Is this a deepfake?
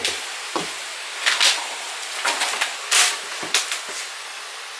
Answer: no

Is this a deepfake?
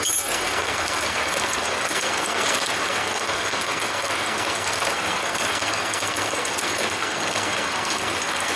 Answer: yes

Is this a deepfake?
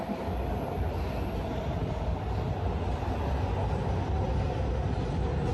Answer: no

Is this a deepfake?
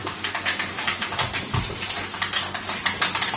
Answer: no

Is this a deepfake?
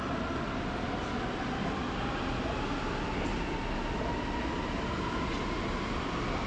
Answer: no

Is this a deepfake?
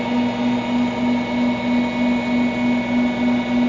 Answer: no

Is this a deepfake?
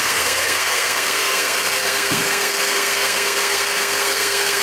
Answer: yes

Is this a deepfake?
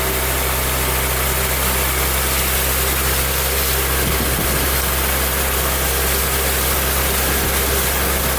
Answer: no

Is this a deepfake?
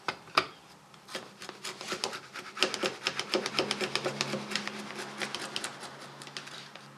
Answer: no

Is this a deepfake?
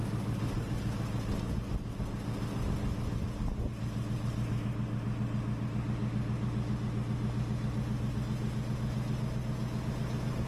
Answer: no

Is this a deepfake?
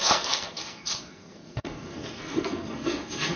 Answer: yes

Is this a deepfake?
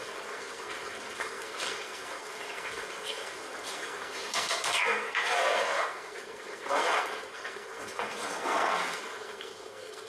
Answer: yes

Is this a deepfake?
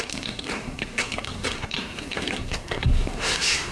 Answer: yes